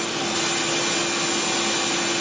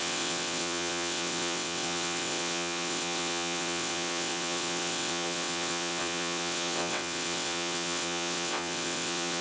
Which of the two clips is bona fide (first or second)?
first